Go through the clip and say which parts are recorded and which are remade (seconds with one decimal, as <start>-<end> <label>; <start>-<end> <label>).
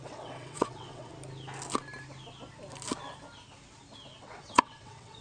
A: 0.0-1.1 remade; 1.1-4.2 recorded; 4.2-5.2 remade